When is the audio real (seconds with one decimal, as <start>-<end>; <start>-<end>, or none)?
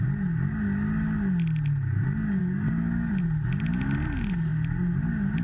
0.0-2.4; 3.1-5.4